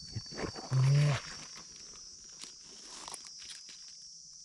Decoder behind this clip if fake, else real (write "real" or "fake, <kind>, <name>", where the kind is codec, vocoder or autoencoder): real